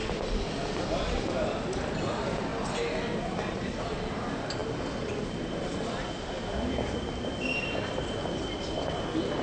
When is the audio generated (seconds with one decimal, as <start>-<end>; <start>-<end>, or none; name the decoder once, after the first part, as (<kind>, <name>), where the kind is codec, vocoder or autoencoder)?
none